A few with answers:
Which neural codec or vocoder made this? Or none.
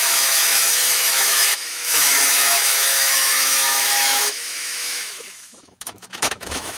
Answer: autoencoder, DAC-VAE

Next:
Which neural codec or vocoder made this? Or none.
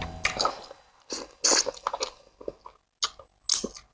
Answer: none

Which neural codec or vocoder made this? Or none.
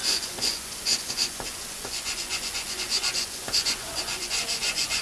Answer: vocoder, Vocos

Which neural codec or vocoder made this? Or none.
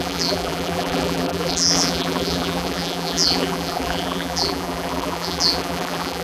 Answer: vocoder, BigVGAN v2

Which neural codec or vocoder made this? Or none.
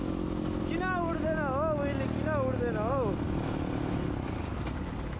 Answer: none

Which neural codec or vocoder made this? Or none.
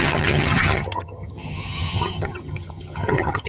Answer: vocoder, HiFi-GAN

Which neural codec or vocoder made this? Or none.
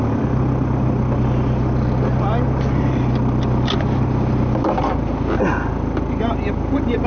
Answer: none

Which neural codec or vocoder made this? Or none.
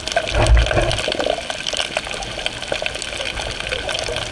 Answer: none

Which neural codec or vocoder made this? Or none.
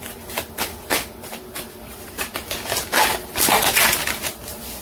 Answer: vocoder, BigVGAN v2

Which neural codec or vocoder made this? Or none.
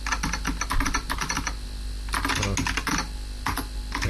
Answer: none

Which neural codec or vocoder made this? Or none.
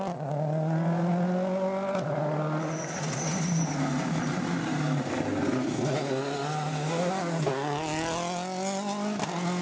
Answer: none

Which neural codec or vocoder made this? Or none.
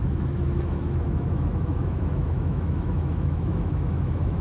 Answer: autoencoder, DAC-VAE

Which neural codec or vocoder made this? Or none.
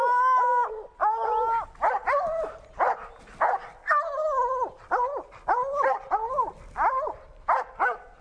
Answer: none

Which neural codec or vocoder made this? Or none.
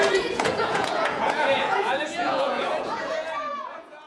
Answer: vocoder, Vocos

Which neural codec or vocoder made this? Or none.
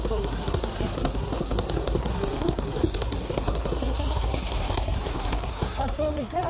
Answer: codec, SNAC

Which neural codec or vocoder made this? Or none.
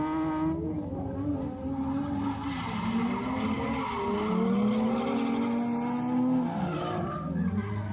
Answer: none